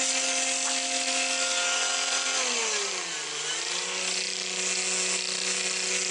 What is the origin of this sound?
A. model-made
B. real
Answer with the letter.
B